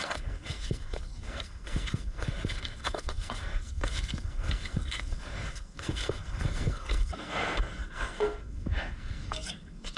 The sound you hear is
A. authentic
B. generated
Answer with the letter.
B